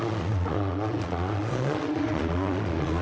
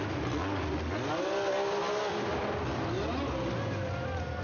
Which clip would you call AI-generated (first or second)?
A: first